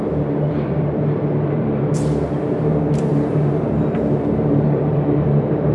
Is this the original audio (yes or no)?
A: no